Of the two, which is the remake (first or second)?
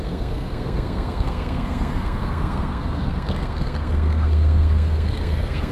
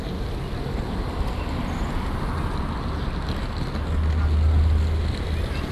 first